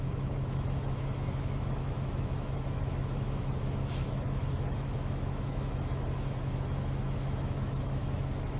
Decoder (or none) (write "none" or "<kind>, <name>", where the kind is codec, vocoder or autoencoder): autoencoder, DAC-VAE